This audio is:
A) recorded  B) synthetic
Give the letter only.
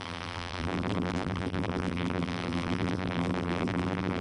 B